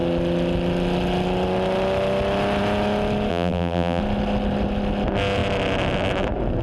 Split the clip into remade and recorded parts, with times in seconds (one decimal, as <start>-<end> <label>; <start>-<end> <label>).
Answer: 0.0-3.3 recorded; 3.3-4.0 remade; 4.0-6.6 recorded